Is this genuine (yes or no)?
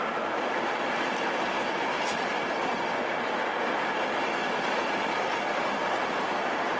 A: yes